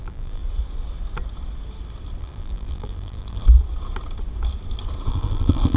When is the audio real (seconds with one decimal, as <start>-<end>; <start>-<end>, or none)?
0.4-2.2; 3.4-5.1